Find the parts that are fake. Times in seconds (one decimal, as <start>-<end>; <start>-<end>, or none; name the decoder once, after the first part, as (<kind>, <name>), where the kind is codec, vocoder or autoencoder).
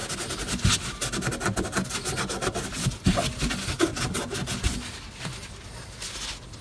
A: none